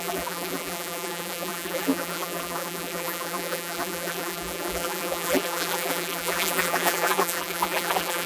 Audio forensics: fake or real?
fake